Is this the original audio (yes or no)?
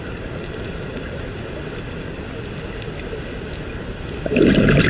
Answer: yes